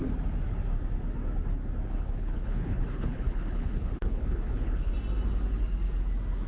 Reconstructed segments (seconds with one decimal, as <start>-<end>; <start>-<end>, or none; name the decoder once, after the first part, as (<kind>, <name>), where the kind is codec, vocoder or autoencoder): 1.9-4.9 (codec, HILCodec)